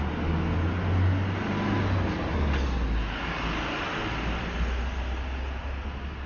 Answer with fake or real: real